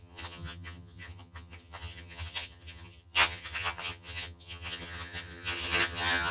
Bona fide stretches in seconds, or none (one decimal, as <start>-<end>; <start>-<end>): none